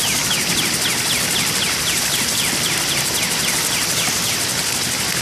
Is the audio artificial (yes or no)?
no